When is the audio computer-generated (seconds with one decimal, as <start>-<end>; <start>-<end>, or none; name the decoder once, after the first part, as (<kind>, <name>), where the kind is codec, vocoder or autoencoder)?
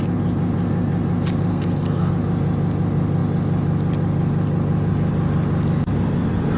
1.5-2.1 (codec, SNAC)